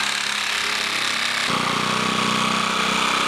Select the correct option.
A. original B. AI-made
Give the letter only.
A